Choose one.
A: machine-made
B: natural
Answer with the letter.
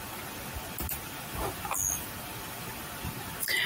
B